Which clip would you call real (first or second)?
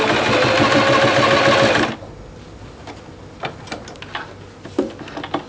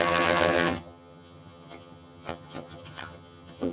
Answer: first